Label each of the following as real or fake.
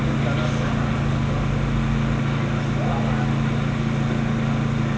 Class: real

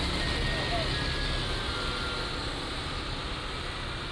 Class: real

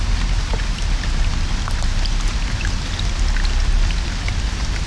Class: real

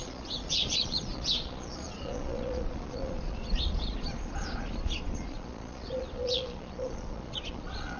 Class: fake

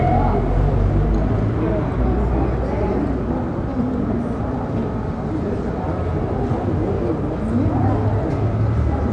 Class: real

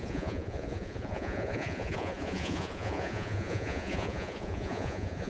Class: fake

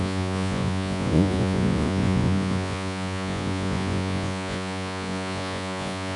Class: fake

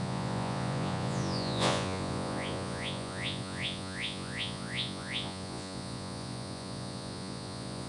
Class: fake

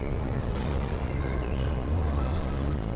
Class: fake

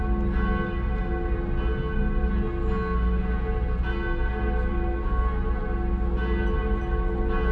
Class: real